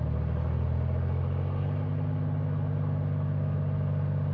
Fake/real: real